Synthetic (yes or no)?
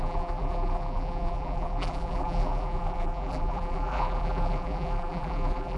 yes